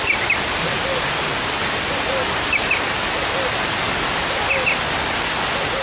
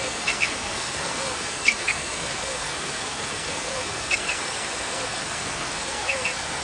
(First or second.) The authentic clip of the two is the first